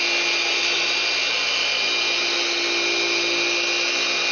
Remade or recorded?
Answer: recorded